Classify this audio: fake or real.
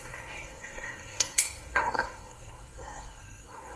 fake